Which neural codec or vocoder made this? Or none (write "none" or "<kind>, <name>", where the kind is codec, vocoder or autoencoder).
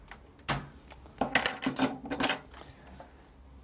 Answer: none